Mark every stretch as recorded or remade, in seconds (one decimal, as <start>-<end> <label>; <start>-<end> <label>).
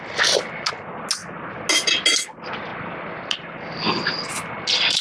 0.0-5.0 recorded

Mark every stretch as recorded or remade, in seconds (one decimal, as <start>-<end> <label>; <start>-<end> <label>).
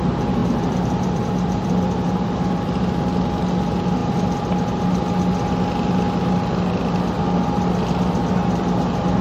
0.0-0.4 recorded; 0.4-2.8 remade; 2.8-4.0 recorded; 4.0-4.6 remade; 4.6-9.2 recorded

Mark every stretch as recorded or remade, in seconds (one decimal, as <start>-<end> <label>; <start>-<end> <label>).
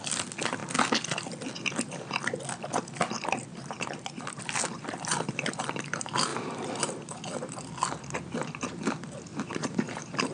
0.0-3.5 recorded; 3.5-4.4 remade; 4.4-6.3 recorded; 6.3-7.2 remade; 7.2-9.3 recorded; 9.3-10.3 remade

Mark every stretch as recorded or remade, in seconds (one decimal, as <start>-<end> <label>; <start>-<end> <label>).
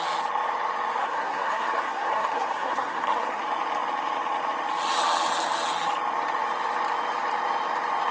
0.0-1.0 recorded; 1.0-3.4 remade; 3.4-8.1 recorded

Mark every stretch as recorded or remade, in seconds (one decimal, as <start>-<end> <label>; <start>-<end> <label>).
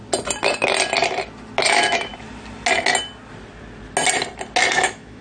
0.0-1.7 recorded; 1.7-2.1 remade; 2.1-4.7 recorded; 4.7-5.2 remade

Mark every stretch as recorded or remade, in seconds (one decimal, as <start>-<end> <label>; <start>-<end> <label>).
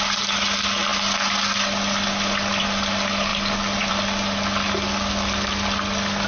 0.0-6.3 recorded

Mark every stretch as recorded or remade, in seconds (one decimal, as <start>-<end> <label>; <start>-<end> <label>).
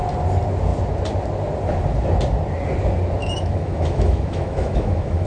0.0-3.2 recorded; 3.2-5.3 remade